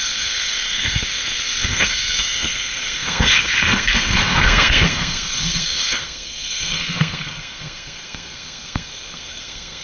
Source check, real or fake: fake